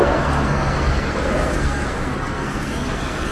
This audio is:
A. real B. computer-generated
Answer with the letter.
B